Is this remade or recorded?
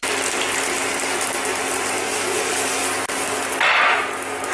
recorded